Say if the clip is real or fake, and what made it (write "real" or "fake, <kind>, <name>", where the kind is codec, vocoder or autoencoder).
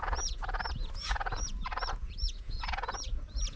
fake, vocoder, Vocos